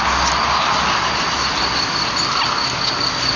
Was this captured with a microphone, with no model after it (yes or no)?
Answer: yes